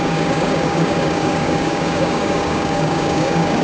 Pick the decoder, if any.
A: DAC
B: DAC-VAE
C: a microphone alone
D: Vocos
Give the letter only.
A